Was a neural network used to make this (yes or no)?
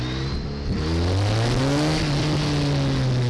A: no